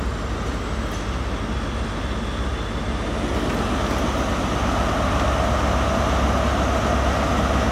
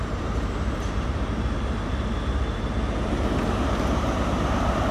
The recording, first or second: first